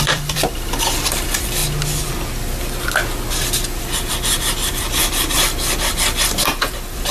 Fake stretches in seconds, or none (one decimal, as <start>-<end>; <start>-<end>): 0.0-1.6; 3.8-7.1